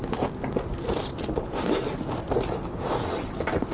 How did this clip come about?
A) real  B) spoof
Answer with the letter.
A